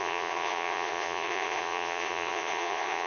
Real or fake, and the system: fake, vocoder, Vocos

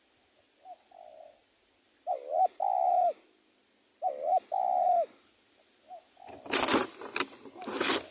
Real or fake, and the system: real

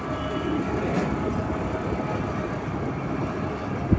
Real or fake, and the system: real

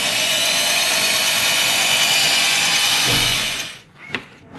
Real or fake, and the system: fake, vocoder, Vocos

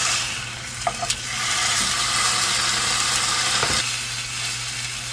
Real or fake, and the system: real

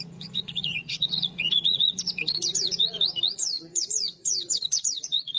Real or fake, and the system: fake, vocoder, Vocos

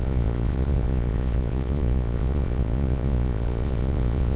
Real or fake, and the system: fake, vocoder, Vocos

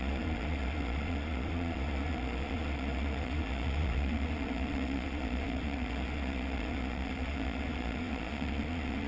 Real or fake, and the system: fake, vocoder, Vocos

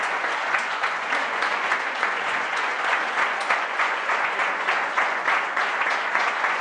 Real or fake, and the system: fake, vocoder, Vocos